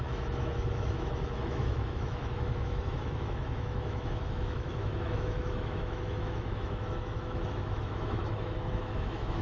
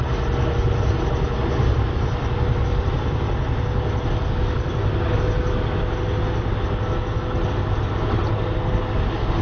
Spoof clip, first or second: first